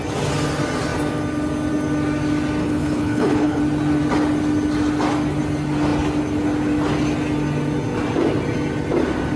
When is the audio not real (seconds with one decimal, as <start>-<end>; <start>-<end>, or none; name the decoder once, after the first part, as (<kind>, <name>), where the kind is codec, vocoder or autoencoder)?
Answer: 2.6-3.6 (codec, HILCodec)